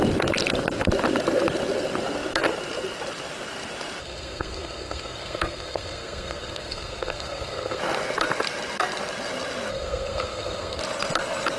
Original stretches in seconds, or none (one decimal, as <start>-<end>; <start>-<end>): 0.0-4.0; 7.8-9.7; 10.8-11.6